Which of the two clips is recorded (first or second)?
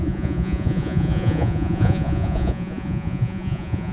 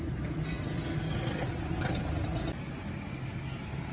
second